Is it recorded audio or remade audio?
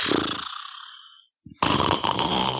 recorded